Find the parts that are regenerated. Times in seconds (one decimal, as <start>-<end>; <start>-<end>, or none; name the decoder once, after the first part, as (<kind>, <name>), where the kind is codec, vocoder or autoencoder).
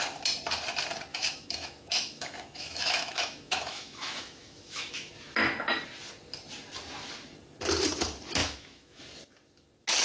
1.1-5.1 (autoencoder, DAC-VAE); 8.4-9.0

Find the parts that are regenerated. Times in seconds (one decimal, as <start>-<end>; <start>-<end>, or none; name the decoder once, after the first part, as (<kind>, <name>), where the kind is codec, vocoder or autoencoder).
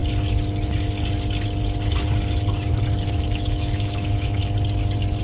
3.1-4.4 (autoencoder, DAC-VAE)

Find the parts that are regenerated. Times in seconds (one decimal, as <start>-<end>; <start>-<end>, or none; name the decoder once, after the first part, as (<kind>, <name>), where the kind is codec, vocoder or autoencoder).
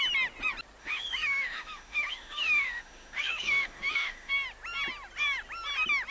0.8-4.3 (autoencoder, DAC-VAE)